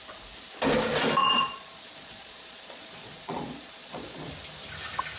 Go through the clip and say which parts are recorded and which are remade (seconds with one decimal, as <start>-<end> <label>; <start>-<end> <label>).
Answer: 0.0-1.2 recorded; 1.2-4.3 remade; 4.3-5.2 recorded